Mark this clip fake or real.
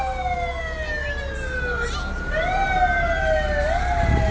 real